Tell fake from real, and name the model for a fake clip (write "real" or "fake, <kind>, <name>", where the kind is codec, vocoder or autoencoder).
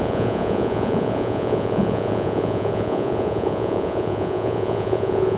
fake, vocoder, Vocos